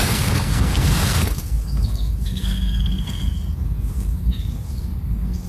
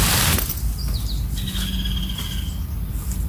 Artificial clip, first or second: first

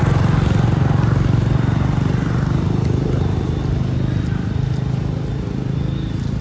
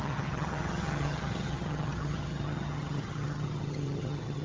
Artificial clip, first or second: second